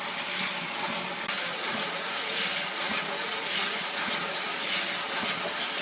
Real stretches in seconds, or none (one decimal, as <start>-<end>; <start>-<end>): 0.0-1.5; 4.7-5.8

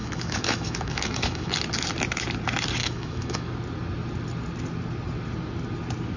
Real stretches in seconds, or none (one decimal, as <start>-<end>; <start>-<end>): 1.5-2.8; 3.5-6.2

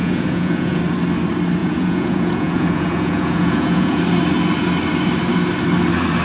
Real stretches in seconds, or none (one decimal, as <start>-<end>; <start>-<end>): 0.8-1.6; 4.0-6.2

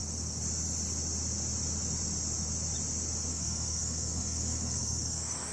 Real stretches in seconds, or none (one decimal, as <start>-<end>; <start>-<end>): 0.0-3.3

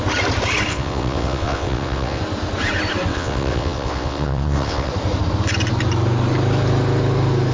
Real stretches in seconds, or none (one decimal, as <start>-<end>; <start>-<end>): 0.0-0.7; 2.2-3.1; 4.9-7.5